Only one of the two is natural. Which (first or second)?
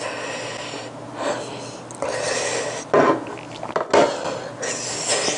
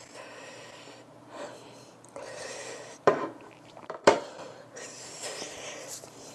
first